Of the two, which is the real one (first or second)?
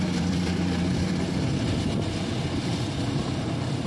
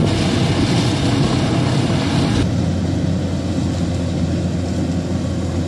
second